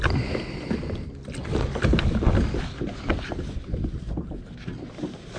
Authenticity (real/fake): real